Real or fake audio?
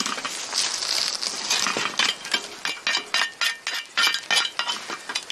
real